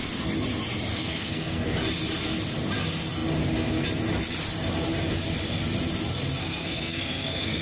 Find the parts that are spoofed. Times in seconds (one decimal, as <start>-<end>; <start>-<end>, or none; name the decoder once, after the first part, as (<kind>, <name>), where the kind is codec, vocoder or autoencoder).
0.9-1.7 (codec, SNAC); 6.4-7.6